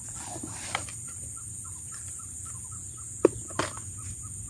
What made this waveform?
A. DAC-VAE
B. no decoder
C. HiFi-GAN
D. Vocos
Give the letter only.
B